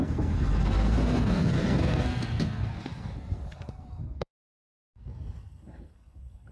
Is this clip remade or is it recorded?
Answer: remade